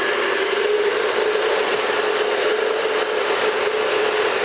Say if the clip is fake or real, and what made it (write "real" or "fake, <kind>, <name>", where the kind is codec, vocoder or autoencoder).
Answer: real